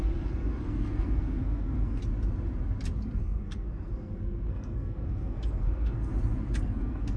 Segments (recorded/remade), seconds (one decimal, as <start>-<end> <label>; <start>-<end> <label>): 0.0-2.0 remade; 2.0-3.2 recorded; 3.2-6.1 remade; 6.1-6.6 recorded; 6.6-7.2 remade